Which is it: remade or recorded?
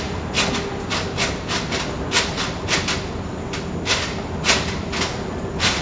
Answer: recorded